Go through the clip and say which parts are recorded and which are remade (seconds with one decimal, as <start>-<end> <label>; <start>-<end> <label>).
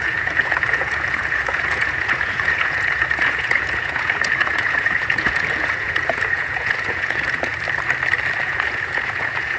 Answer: 0.0-7.5 remade; 7.5-8.4 recorded; 8.4-9.6 remade